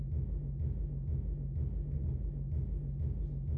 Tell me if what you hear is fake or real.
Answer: real